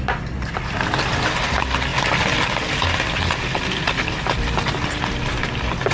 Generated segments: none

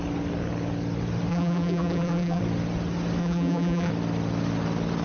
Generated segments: 1.3-2.4 (vocoder, BigVGAN v2); 3.2-3.9

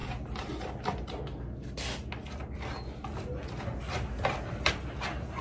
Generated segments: none

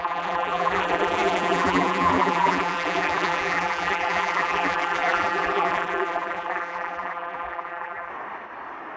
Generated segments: 0.0-8.1 (vocoder, BigVGAN v2)

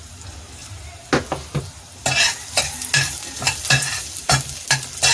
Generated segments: none